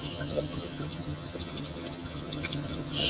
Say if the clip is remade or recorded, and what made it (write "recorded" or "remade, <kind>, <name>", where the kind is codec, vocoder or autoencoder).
remade, vocoder, HiFi-GAN